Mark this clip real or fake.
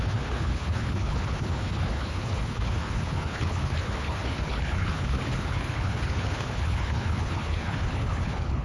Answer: fake